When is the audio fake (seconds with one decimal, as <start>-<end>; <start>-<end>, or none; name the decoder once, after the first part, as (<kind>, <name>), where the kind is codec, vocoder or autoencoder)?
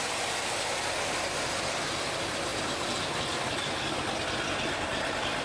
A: none